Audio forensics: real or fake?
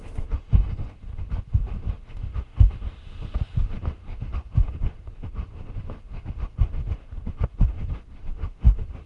fake